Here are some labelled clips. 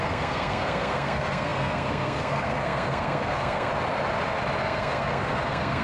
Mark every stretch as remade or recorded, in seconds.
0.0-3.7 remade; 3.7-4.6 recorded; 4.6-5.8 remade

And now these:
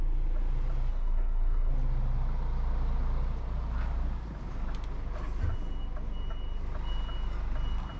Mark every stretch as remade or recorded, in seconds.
0.0-0.9 recorded; 0.9-1.7 remade; 1.7-8.0 recorded

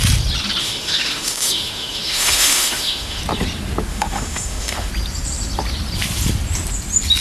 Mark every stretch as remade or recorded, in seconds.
0.0-0.6 recorded; 0.6-3.2 remade; 3.2-3.9 recorded; 3.9-4.9 remade; 4.9-7.2 recorded

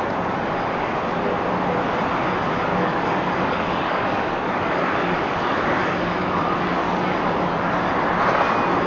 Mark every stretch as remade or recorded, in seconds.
0.0-2.7 recorded; 2.7-7.9 remade; 7.9-8.9 recorded